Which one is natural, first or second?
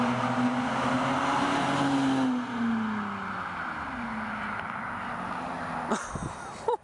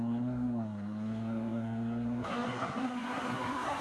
first